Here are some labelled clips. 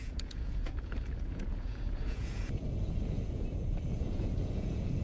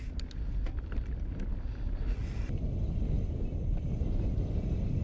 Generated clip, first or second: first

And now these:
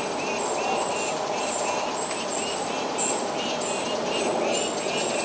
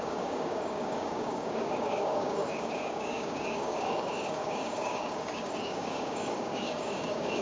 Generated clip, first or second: second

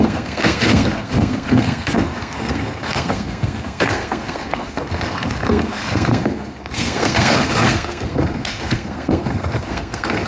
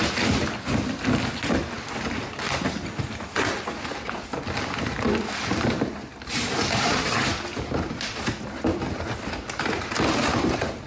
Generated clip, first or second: first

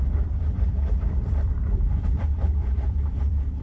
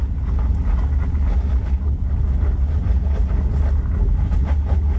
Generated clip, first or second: first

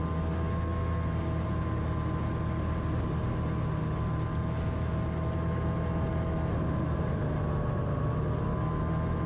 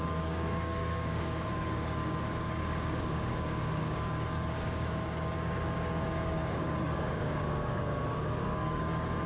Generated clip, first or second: second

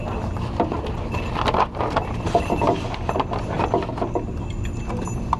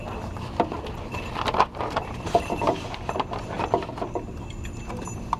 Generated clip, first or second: second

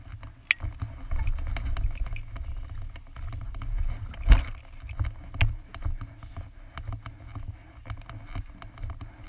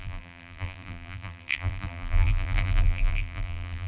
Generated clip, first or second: second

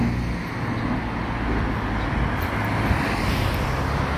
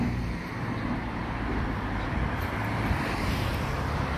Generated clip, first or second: second